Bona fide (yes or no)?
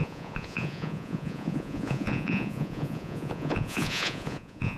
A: no